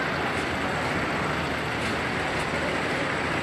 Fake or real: real